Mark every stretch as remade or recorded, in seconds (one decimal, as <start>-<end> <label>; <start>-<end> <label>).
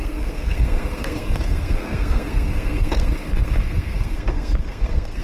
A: 0.0-5.2 remade